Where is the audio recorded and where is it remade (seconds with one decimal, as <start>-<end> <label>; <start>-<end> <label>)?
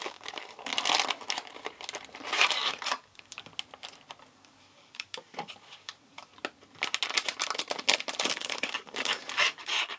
0.0-0.7 remade; 0.7-2.4 recorded; 2.4-3.5 remade; 3.5-4.3 recorded; 4.3-6.3 remade; 6.3-8.3 recorded; 8.3-10.0 remade